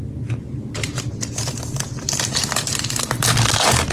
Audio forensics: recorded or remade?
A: recorded